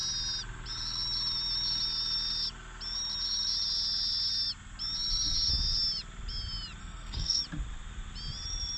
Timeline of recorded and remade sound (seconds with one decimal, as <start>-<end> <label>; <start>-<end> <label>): 0.0-6.8 recorded; 6.8-7.4 remade; 7.4-8.8 recorded